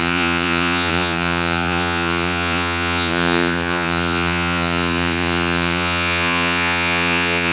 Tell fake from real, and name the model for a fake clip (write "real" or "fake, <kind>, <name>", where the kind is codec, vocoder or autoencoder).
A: fake, vocoder, Vocos